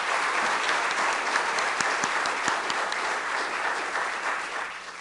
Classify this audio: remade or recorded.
remade